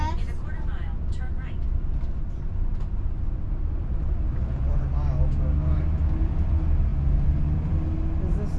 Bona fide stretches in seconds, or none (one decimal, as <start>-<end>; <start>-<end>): 0.0-8.6